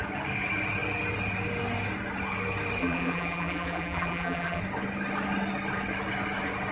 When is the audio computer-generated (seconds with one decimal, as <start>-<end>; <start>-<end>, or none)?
2.8-4.6

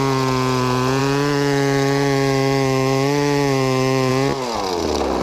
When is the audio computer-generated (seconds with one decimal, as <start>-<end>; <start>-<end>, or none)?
1.0-4.1

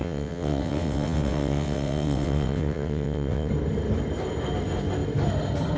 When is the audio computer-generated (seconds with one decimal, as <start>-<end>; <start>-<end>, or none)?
0.0-3.5